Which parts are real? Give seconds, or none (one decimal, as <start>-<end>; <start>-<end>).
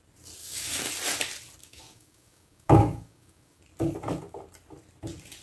0.0-0.4; 0.9-1.6; 3.6-5.4